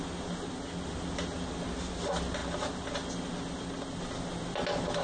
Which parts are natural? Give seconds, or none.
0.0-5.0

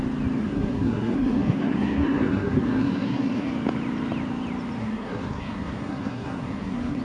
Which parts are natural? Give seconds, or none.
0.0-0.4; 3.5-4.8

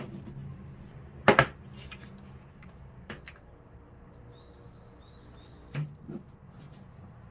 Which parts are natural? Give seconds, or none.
0.0-7.3